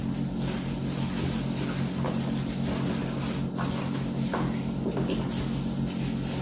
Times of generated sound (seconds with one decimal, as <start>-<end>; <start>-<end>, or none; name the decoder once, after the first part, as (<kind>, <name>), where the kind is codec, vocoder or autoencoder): none